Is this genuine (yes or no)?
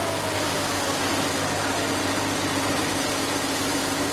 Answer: yes